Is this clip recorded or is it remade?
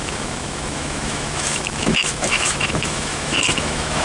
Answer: remade